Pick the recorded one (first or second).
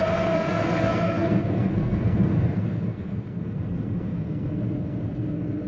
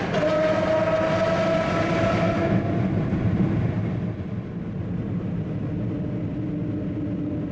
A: second